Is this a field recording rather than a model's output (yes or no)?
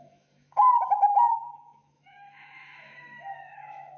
no